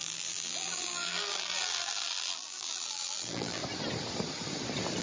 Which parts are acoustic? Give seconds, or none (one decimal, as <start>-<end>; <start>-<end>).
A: 3.6-5.0